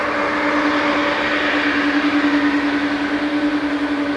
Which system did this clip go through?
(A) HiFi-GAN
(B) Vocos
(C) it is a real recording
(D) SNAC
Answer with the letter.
C